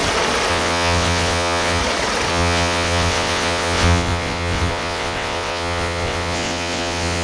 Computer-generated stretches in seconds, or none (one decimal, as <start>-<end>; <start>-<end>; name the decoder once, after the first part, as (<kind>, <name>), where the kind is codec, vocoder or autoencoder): 0.5-1.8 (vocoder, WaveNeXt); 2.3-7.2